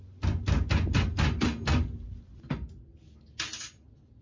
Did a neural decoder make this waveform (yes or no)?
no